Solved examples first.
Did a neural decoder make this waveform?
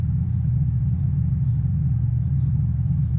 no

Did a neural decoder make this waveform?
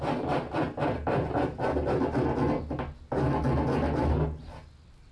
no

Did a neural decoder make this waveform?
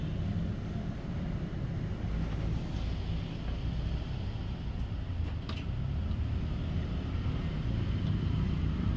no